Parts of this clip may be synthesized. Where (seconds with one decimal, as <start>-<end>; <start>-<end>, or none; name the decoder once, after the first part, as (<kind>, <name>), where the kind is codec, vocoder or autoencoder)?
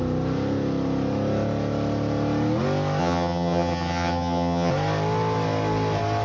3.0-4.7 (vocoder, HiFi-GAN)